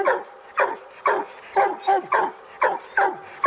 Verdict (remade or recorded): recorded